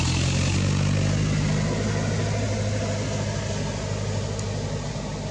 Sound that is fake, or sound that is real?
real